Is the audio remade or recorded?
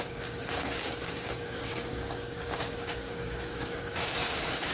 remade